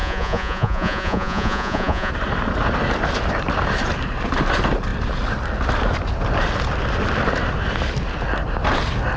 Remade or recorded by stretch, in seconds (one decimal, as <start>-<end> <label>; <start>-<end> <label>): 0.0-2.1 remade; 2.1-9.2 recorded